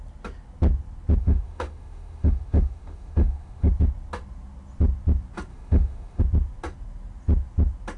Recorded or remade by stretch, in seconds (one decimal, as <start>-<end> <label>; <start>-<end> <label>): 0.0-1.2 recorded; 1.2-3.7 remade; 3.7-5.5 recorded; 5.5-6.2 remade; 6.2-8.0 recorded